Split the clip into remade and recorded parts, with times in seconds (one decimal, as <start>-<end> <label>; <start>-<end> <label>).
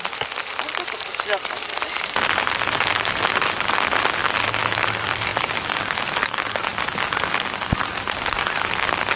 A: 0.0-4.2 remade; 4.2-4.7 recorded; 4.7-9.2 remade